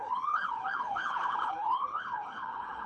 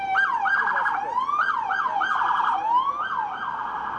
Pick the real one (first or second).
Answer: second